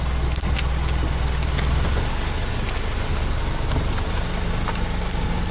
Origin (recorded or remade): recorded